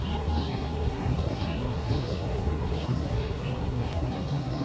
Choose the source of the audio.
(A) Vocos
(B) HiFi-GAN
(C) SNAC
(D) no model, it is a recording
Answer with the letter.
C